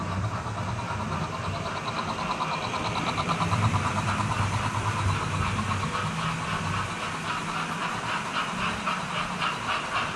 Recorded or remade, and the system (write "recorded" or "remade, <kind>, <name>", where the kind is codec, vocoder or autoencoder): recorded